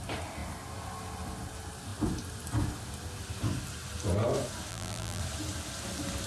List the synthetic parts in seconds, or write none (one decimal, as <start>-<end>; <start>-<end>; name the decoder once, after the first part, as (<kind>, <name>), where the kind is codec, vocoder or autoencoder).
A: 4.7-5.2 (vocoder, BigVGAN v2)